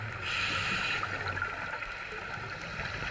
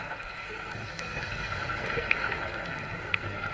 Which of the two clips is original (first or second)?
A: first